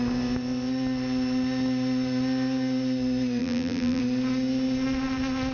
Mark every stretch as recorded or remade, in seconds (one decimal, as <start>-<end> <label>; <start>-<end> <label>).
0.0-3.4 recorded; 3.4-4.0 remade; 4.0-5.5 recorded